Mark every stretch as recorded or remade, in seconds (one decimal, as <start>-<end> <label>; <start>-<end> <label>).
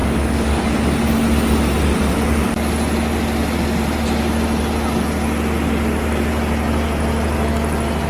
0.0-0.6 remade; 0.6-8.1 recorded